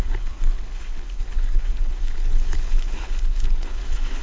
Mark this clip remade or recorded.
remade